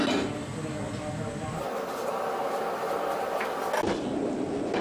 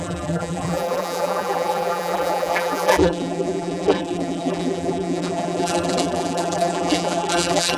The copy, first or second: second